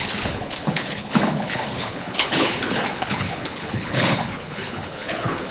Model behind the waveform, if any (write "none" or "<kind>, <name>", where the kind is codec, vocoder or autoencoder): codec, HILCodec